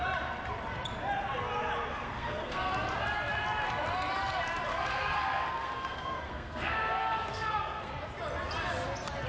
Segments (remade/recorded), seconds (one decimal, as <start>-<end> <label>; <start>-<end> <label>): 0.0-1.9 recorded; 1.9-2.7 remade; 2.7-4.7 recorded; 4.7-7.9 remade; 7.9-9.3 recorded